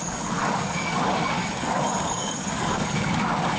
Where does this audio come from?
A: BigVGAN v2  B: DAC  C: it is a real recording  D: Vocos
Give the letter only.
B